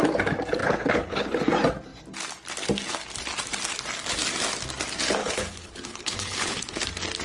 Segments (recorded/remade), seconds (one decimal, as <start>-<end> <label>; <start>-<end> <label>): 0.0-0.6 recorded; 0.6-1.3 remade; 1.3-5.2 recorded; 5.2-6.7 remade; 6.7-7.2 recorded